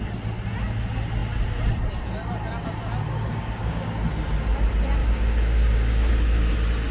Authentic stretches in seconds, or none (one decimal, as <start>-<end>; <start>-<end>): 0.0-3.1; 4.0-5.0; 6.1-6.9